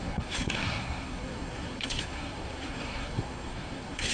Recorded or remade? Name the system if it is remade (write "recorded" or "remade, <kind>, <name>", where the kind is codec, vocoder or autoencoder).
remade, codec, SNAC